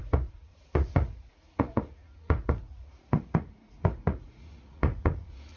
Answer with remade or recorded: remade